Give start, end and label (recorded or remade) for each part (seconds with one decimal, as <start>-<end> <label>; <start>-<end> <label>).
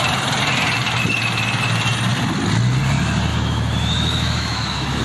0.0-3.3 recorded; 3.3-5.0 remade